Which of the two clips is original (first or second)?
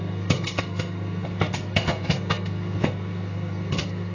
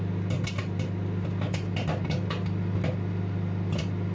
second